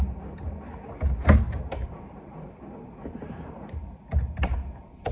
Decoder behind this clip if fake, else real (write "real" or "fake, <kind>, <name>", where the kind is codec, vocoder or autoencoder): fake, vocoder, BigVGAN v2